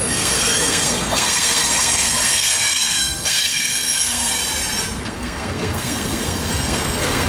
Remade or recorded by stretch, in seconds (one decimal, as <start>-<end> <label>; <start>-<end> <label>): 0.0-4.4 remade; 4.4-5.0 recorded; 5.0-7.3 remade